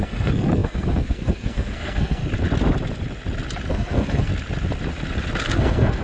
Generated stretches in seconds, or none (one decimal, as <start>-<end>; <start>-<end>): 0.0-2.2; 3.7-4.3; 5.4-6.0